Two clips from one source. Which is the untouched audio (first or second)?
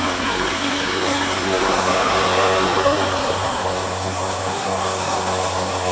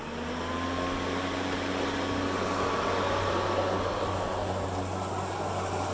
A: second